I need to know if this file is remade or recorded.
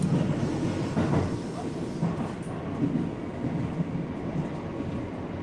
recorded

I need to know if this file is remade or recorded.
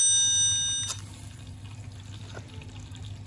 recorded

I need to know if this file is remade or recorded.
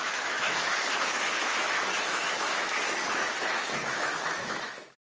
remade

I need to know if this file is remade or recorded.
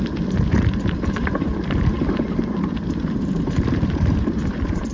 remade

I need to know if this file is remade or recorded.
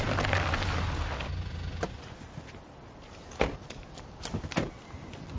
recorded